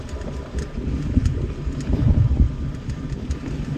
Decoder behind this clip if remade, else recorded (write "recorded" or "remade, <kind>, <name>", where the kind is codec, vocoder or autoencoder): recorded